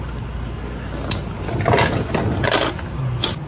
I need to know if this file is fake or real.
real